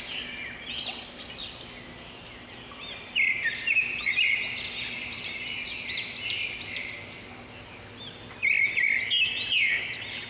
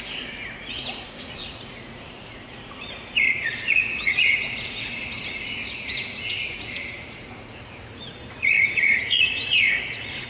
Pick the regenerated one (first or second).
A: second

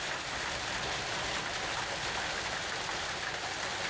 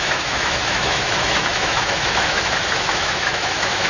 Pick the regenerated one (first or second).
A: second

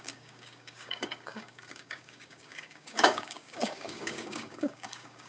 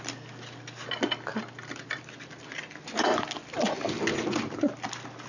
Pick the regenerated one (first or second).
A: first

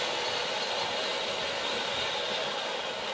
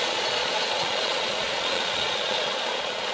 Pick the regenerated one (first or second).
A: second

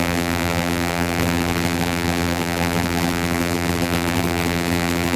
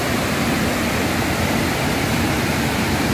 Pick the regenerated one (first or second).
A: first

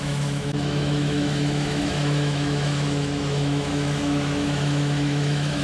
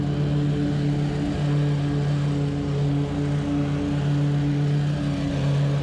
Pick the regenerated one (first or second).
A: first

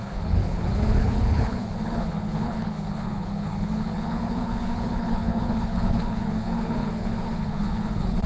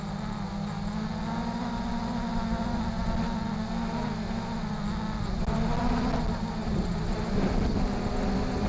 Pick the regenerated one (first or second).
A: first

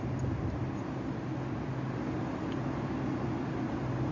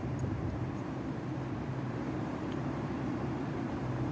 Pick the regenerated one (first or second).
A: second